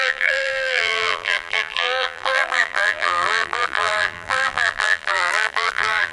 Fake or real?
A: fake